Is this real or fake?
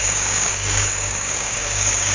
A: fake